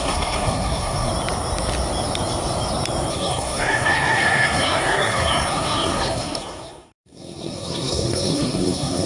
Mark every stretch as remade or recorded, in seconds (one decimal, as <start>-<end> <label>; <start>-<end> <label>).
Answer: 0.0-1.1 remade; 1.1-3.1 recorded; 3.1-9.1 remade